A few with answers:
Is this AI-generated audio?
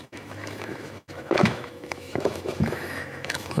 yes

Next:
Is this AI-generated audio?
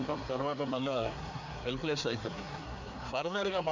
yes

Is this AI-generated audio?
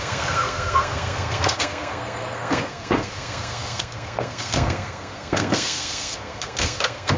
yes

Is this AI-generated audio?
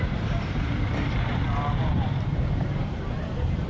yes